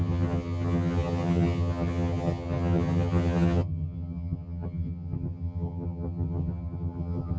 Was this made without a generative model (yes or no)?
no